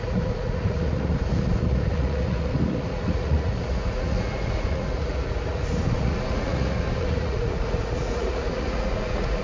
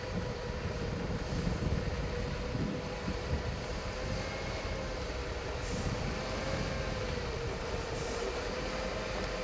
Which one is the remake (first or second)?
first